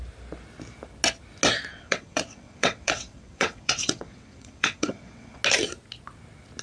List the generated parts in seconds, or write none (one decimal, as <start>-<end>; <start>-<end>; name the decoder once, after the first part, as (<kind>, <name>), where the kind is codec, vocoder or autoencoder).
1.7-5.4 (vocoder, WaveNeXt)